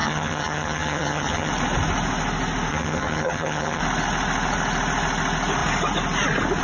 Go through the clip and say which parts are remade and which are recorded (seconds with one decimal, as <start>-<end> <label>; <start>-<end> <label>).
0.0-1.5 remade; 1.5-2.7 recorded; 2.7-3.8 remade; 3.8-6.6 recorded